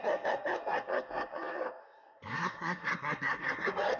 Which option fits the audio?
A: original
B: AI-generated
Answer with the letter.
B